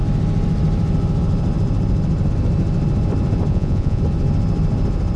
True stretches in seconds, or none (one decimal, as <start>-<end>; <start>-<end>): 0.0-3.5; 4.0-5.2